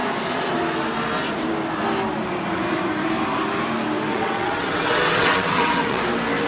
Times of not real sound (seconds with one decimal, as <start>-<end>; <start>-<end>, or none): 4.1-6.0